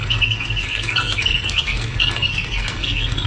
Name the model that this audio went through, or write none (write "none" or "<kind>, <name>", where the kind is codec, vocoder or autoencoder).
codec, SNAC